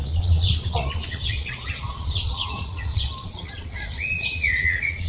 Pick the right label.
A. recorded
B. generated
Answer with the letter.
B